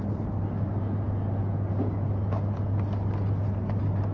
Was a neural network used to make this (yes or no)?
no